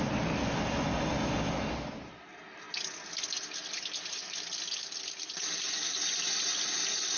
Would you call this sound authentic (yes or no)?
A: yes